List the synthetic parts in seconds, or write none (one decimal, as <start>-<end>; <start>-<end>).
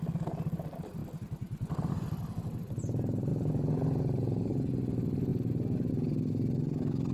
3.3-4.5